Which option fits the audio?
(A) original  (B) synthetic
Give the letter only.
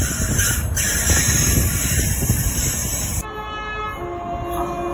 A